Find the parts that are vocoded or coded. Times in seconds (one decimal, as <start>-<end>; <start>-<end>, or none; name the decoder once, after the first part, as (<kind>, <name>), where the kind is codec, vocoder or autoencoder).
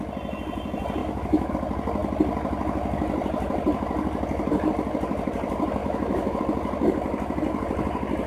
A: 1.0-1.5 (autoencoder, DAC-VAE); 5.8-6.4